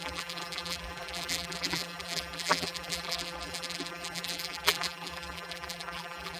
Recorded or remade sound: remade